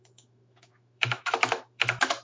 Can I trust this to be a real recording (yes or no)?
no